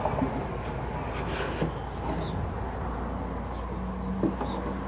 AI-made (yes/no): no